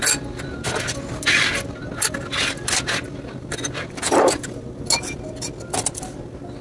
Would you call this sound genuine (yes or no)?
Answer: yes